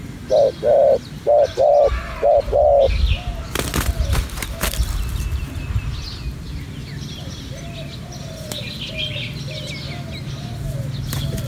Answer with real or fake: real